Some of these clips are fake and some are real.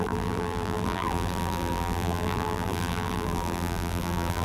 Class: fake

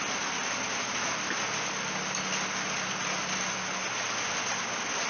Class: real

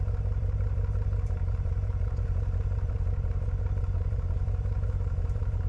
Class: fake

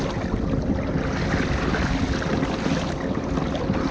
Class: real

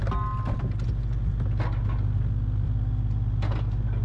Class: real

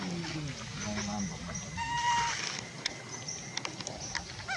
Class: real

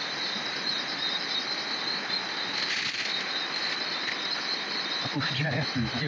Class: real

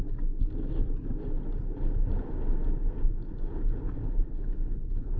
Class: real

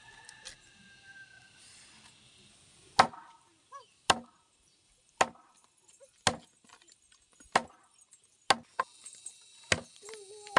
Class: real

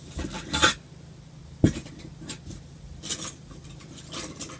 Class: real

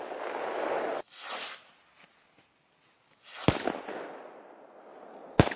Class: real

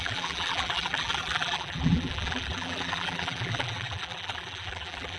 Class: fake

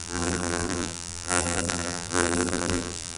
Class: fake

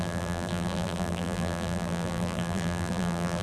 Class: fake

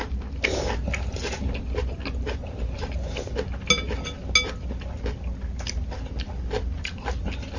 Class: real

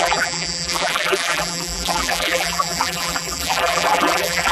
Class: fake